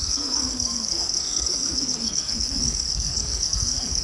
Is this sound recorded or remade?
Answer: remade